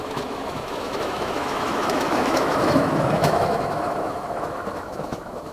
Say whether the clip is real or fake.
fake